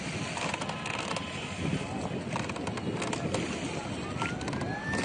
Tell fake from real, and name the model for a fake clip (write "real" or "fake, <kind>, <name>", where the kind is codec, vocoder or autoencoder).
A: real